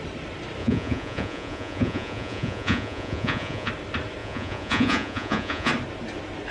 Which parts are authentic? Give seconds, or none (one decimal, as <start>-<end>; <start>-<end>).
0.0-0.6; 3.7-4.2; 5.7-6.5